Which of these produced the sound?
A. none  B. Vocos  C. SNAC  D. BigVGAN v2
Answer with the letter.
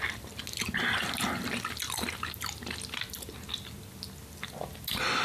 A